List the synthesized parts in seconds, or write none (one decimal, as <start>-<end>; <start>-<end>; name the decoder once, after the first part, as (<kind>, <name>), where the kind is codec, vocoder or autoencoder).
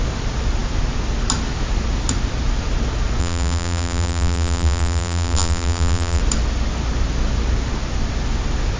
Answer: 3.2-6.2 (vocoder, BigVGAN v2)